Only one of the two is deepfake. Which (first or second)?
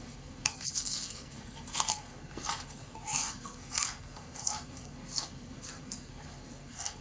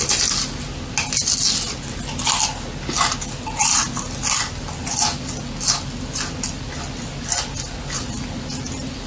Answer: first